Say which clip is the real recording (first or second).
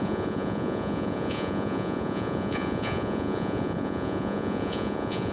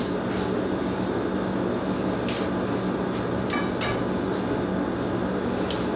second